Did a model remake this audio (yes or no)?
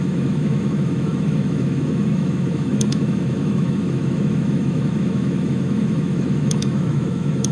yes